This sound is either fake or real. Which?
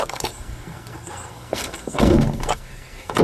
fake